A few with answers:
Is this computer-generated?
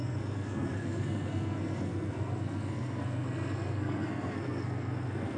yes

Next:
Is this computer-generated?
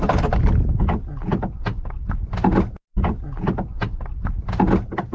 no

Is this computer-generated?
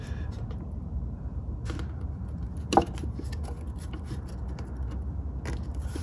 no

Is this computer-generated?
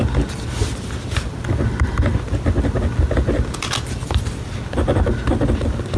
no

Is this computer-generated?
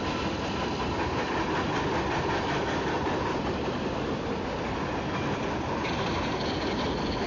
no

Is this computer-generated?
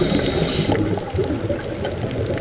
no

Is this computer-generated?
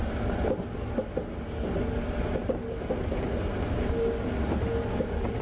no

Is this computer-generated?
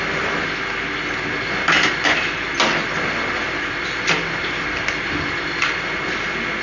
no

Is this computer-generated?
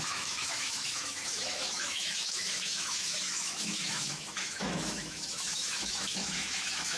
yes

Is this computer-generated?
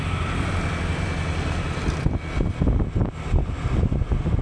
no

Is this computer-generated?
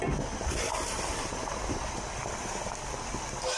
yes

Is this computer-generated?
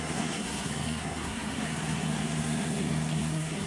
yes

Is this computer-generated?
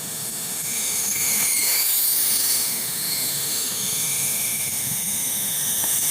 yes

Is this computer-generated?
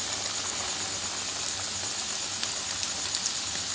no